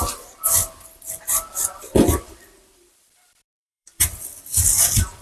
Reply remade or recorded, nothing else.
remade